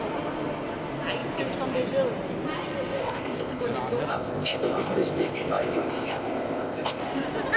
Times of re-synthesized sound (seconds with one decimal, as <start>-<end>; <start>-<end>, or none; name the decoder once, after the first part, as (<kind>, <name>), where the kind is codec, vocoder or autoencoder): 3.0-3.6 (codec, ZipCodec); 4.1-7.0